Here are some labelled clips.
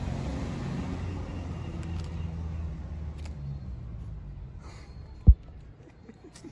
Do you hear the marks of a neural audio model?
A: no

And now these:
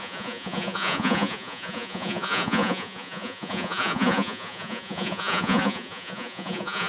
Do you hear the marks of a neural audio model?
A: yes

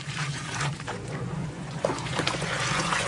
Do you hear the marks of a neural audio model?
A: yes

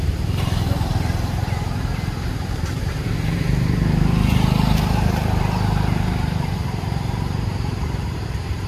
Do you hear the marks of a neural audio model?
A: yes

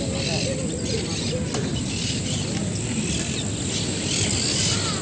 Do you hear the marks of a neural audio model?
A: no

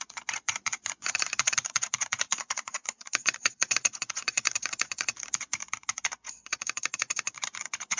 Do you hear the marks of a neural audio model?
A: yes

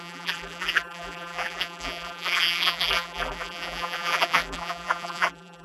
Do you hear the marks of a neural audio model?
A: yes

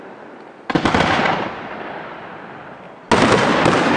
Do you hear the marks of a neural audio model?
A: no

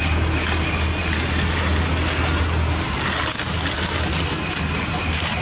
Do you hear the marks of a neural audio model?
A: no